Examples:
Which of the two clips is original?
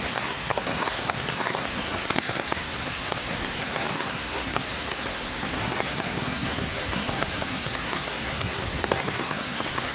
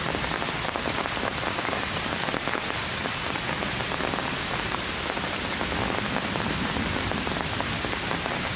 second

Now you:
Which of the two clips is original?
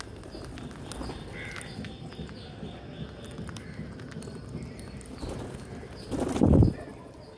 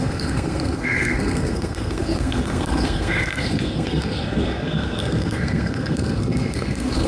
first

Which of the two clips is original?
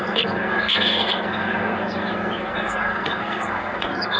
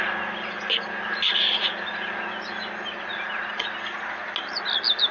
second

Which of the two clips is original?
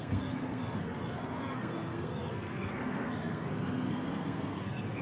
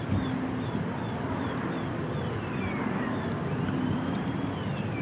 second